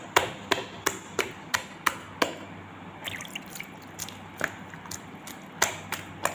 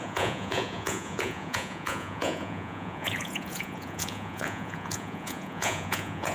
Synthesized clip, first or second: second